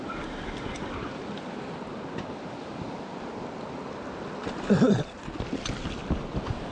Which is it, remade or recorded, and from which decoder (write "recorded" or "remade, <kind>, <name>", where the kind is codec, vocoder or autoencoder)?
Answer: recorded